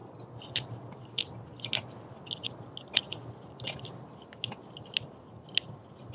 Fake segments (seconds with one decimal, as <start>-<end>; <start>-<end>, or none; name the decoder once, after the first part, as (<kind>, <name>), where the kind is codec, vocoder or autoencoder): none